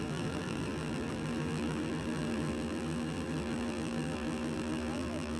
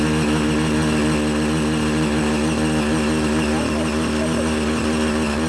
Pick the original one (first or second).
second